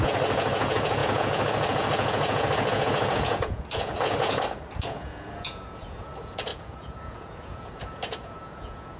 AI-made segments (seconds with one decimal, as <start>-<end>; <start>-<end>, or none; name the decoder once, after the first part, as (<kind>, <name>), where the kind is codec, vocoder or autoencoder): 0.0-9.0 (vocoder, Vocos)